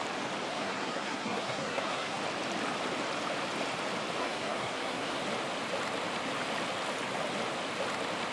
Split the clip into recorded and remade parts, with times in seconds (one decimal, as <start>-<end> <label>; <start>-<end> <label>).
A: 0.0-0.5 recorded; 0.5-2.2 remade; 2.2-4.2 recorded; 4.2-5.2 remade; 5.2-8.3 recorded